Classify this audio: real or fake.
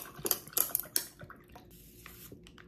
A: real